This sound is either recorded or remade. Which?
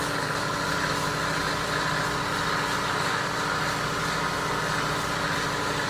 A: recorded